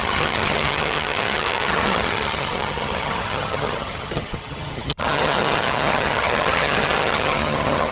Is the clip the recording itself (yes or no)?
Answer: no